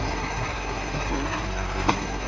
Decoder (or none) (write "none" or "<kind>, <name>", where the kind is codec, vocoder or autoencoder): codec, SNAC